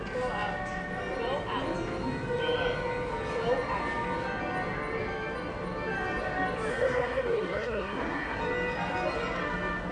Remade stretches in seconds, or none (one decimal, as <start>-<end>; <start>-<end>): 6.7-8.4